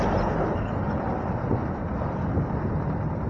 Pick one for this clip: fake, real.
real